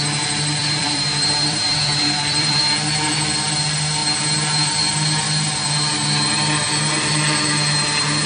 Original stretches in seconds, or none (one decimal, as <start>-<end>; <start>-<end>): 0.0-0.6; 2.6-8.3